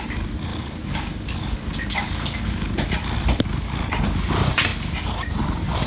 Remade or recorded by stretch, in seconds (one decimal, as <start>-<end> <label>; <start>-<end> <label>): 0.0-0.5 recorded; 0.5-2.7 remade; 2.7-5.9 recorded